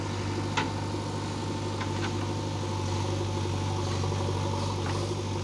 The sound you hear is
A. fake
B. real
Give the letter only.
B